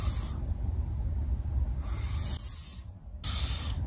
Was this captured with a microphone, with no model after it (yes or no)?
yes